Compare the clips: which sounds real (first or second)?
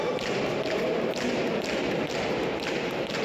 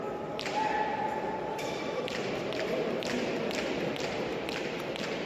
first